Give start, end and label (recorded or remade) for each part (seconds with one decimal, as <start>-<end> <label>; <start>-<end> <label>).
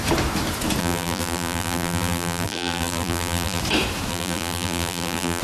0.0-0.8 recorded; 0.8-3.6 remade; 3.6-4.1 recorded; 4.1-5.4 remade